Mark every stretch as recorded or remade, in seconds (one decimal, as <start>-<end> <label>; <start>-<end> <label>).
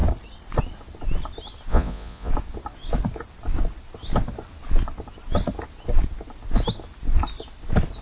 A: 0.0-1.7 recorded; 1.7-2.3 remade; 2.3-8.0 recorded